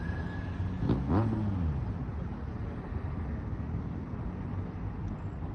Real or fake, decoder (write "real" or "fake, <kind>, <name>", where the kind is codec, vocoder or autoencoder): real